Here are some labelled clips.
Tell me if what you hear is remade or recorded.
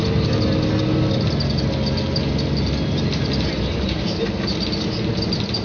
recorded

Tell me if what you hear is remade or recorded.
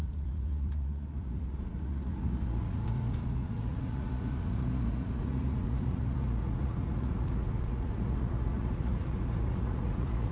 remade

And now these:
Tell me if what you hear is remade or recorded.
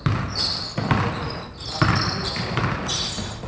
recorded